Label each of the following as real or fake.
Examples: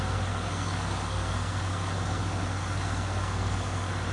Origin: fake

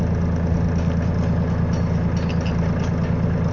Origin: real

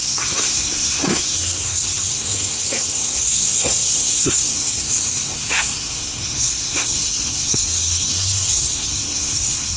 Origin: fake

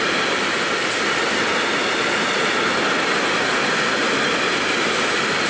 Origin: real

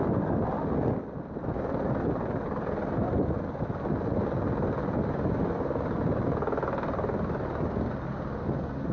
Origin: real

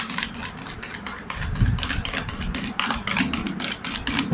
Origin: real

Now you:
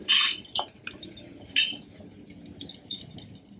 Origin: real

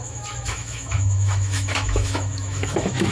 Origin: fake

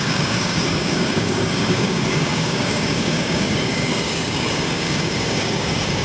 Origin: fake